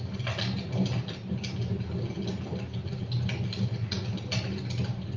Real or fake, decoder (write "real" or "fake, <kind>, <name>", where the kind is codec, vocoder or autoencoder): real